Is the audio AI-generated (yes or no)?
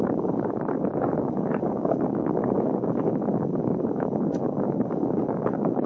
yes